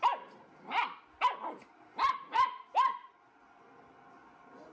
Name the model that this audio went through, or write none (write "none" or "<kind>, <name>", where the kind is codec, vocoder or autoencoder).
none